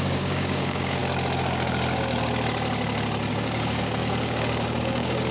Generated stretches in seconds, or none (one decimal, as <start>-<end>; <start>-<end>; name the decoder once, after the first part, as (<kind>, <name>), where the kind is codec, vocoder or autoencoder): 0.0-1.0 (codec, DAC); 3.3-5.3